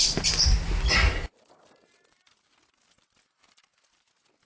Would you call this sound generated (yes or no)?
no